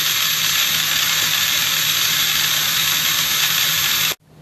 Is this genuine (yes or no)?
yes